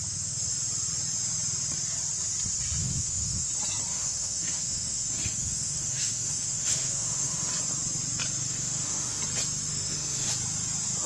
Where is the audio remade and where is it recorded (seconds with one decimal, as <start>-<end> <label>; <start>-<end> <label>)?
0.0-2.8 recorded; 2.8-3.5 remade; 3.5-3.9 recorded; 3.9-7.5 remade; 7.5-8.5 recorded; 8.5-9.2 remade; 9.2-9.7 recorded; 9.7-10.3 remade; 10.3-11.1 recorded